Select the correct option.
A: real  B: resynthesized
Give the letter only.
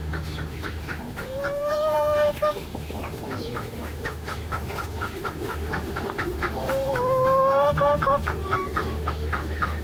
B